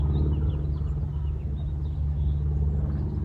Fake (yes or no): no